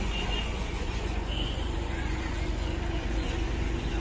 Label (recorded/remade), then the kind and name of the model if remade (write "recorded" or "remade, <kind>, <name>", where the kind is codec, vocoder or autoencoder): remade, vocoder, Vocos